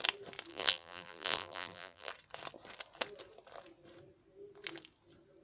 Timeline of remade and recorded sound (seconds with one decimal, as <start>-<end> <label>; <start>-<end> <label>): 0.0-0.5 recorded; 0.5-2.1 remade; 2.1-5.4 recorded